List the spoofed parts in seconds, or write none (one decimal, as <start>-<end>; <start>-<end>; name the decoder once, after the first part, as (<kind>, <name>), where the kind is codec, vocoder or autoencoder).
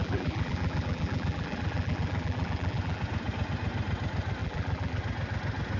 0.0-3.0 (vocoder, BigVGAN v2); 4.4-5.0